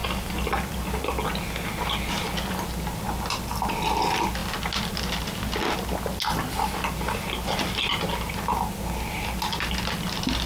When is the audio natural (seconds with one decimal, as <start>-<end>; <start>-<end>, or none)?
0.0-10.5